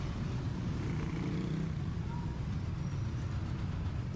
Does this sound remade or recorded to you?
recorded